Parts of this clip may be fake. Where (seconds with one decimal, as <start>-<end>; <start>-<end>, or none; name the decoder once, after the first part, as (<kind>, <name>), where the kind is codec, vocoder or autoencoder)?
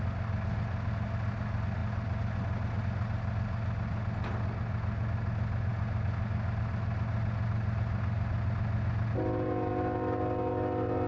none